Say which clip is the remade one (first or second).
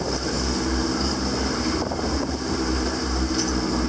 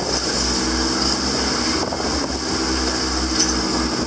first